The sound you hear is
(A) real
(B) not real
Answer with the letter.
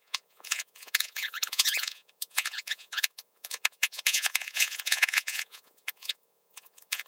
B